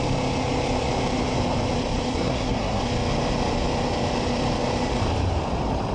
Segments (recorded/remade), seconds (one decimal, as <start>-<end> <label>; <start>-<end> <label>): 0.0-2.1 recorded; 2.1-2.8 remade; 2.8-5.9 recorded